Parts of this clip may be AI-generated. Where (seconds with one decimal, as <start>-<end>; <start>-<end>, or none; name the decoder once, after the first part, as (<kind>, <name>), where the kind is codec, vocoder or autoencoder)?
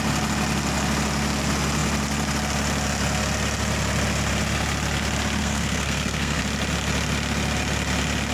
5.4-6.4 (codec, SNAC)